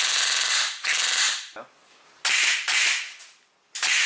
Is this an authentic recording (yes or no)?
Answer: yes